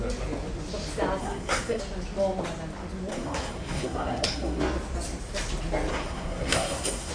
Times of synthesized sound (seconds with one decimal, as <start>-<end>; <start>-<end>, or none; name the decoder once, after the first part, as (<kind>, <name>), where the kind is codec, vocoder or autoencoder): 1.2-1.8 (codec, SNAC); 3.1-4.6; 5.9-7.1